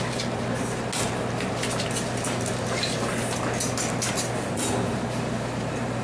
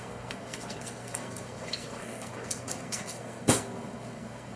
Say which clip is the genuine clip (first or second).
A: first